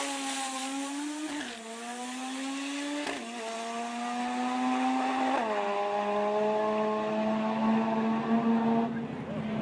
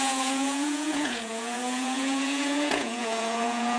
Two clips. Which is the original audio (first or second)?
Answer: first